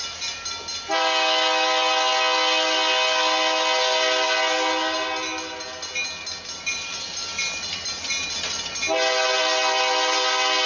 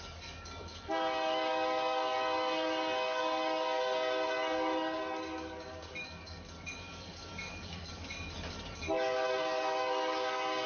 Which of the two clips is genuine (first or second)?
first